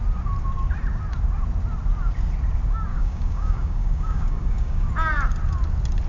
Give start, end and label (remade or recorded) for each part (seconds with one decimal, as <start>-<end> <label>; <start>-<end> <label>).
0.0-2.9 recorded; 2.9-4.9 remade; 4.9-6.1 recorded